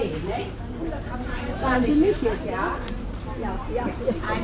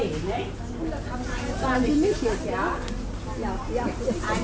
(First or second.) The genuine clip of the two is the second